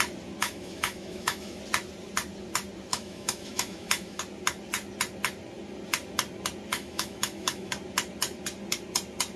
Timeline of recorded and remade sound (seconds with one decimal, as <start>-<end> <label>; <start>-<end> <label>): 0.0-0.4 recorded; 0.4-1.6 remade; 1.6-2.9 recorded; 2.9-4.2 remade; 4.2-6.7 recorded; 6.7-7.7 remade; 7.7-9.4 recorded